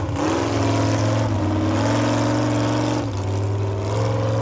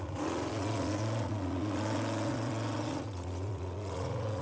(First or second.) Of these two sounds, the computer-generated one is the second